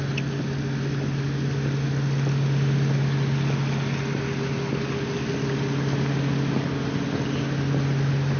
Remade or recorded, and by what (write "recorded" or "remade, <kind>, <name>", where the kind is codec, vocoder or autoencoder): recorded